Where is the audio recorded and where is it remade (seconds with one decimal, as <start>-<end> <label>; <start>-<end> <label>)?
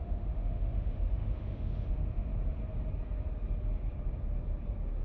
0.0-2.3 remade; 2.3-5.0 recorded